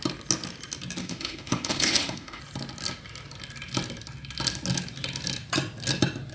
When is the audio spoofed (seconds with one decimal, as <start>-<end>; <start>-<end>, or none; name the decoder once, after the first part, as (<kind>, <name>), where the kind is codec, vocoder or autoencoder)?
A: 1.0-2.4 (autoencoder, DAC-VAE)

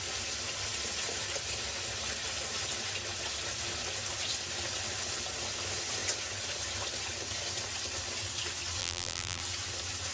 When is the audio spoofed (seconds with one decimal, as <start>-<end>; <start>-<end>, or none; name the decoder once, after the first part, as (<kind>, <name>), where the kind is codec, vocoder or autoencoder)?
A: 8.8-9.4 (vocoder, BigVGAN v2)

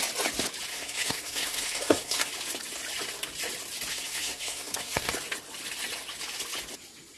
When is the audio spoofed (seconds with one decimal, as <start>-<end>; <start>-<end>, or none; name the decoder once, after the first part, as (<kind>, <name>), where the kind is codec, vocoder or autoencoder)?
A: 0.7-2.3 (codec, SNAC); 3.9-5.1

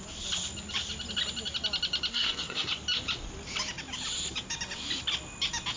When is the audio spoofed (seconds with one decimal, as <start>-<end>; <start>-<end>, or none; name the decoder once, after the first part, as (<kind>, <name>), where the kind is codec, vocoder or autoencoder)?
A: 2.1-2.7 (codec, SNAC)

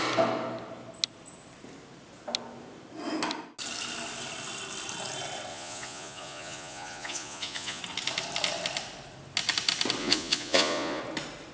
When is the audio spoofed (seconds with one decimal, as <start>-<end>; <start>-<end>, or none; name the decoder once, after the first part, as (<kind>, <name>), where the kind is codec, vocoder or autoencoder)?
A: 5.5-7.8 (vocoder, Vocos); 10.0-11.0